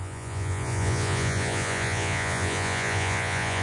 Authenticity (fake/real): fake